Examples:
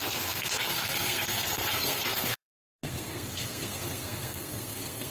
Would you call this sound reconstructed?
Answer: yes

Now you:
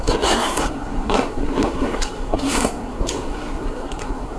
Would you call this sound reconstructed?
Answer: yes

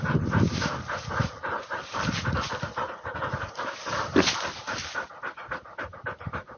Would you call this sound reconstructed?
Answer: no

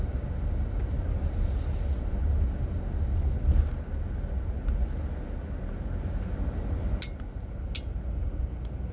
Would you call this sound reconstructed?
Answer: no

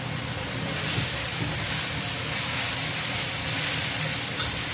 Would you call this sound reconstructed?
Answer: no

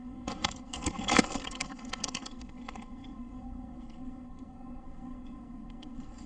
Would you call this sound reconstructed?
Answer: yes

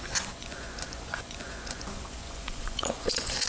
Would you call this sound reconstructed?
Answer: yes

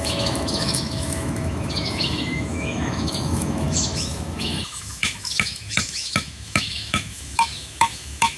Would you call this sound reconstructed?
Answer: yes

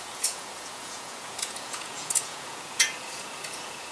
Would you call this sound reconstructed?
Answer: yes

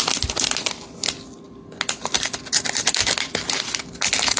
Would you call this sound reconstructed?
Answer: no